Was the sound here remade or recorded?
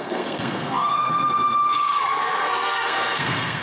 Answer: remade